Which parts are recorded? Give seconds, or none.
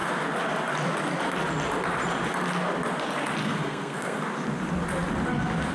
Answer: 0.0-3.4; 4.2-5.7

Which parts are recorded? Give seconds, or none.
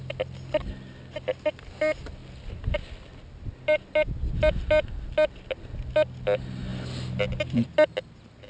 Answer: 0.0-8.5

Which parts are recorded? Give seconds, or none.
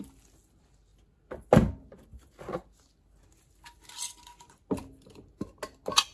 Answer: 0.0-6.1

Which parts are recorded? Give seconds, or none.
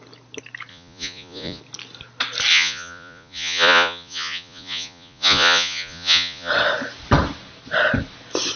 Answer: 0.0-0.7; 1.6-2.5; 6.5-8.6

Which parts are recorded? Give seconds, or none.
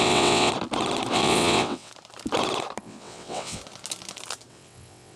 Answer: 0.5-1.1; 1.9-2.8; 3.6-4.5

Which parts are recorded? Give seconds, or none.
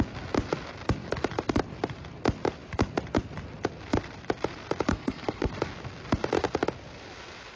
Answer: 0.0-4.9; 5.5-7.6